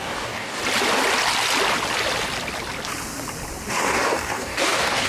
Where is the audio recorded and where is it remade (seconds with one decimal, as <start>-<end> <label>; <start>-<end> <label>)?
0.0-0.6 remade; 0.6-3.7 recorded; 3.7-5.1 remade